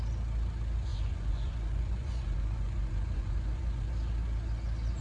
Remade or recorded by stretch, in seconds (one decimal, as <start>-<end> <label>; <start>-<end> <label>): 0.0-0.9 recorded; 0.9-3.9 remade; 3.9-5.0 recorded